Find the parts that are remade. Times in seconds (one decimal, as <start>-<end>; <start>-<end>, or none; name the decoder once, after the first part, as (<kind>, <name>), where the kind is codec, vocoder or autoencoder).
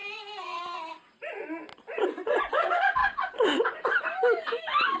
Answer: none